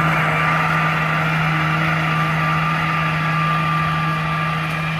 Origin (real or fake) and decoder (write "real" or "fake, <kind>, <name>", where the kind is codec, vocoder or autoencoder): real